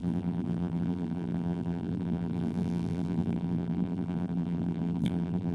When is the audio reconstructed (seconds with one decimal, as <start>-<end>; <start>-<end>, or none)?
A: 0.0-5.5